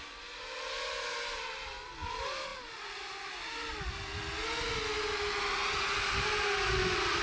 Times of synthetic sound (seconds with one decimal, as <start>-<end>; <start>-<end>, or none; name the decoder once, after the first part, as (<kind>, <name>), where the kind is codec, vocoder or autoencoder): none